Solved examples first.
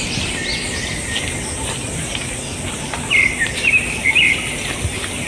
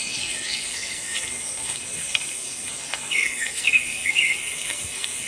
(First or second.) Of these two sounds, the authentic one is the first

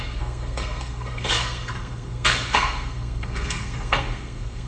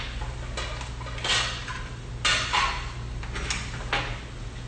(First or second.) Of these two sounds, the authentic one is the second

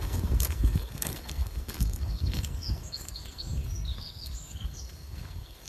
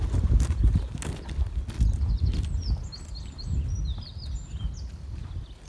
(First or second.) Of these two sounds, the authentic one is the second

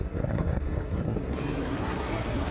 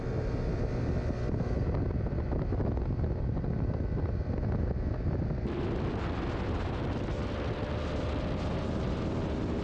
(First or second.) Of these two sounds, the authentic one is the second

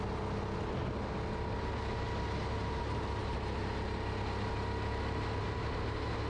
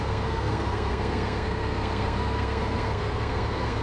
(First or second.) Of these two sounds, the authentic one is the first